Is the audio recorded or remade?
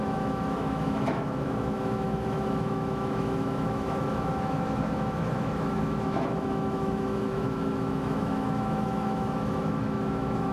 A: remade